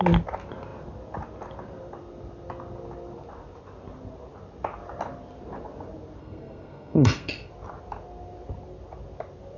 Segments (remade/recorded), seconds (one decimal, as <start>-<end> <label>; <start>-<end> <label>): 0.0-6.2 recorded; 6.2-7.5 remade; 7.5-9.6 recorded